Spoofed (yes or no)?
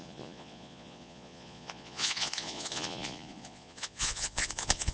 yes